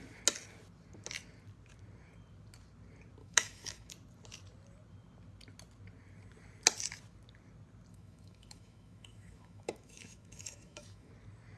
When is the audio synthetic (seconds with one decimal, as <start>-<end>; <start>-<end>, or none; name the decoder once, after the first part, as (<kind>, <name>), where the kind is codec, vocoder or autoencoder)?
3.2-3.9 (autoencoder, DAC-VAE); 7.9-11.1